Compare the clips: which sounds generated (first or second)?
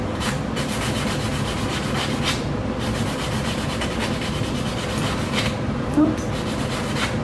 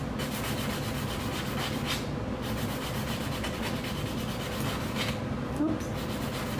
first